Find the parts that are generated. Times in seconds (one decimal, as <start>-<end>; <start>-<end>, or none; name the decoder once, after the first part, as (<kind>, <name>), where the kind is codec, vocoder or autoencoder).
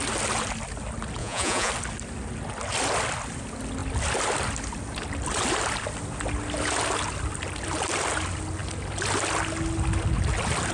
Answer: 1.2-1.7 (vocoder, Vocos)